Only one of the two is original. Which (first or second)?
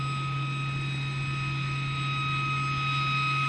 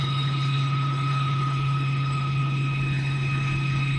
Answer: first